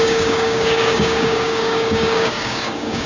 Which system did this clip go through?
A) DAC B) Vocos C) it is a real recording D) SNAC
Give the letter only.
A